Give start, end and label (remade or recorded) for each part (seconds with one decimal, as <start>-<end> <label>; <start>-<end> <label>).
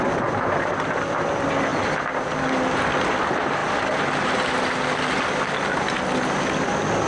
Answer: 0.0-7.1 recorded